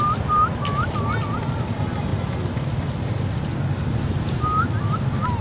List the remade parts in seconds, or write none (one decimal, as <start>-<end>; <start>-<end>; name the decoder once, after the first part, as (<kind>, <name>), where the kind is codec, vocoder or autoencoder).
0.5-1.0 (autoencoder, DAC-VAE)